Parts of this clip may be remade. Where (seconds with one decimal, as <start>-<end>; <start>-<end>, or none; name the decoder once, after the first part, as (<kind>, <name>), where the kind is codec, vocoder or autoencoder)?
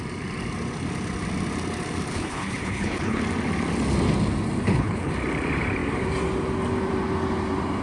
2.1-3.2 (codec, HILCodec); 4.6-5.1